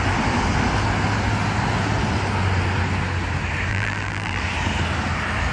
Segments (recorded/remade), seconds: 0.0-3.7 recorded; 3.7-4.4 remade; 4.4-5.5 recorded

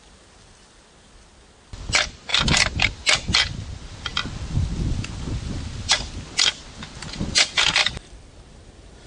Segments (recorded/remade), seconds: 0.0-9.1 recorded

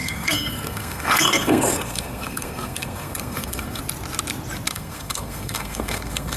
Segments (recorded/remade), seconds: 0.0-3.8 remade; 3.8-4.7 recorded; 4.7-6.4 remade

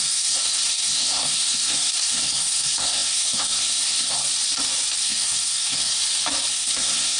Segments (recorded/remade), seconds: 0.0-4.2 remade; 4.2-5.0 recorded; 5.0-6.0 remade; 6.0-6.5 recorded; 6.5-7.2 remade